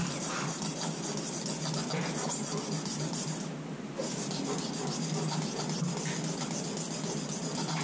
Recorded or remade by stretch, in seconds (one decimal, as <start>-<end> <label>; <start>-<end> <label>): 0.0-7.8 recorded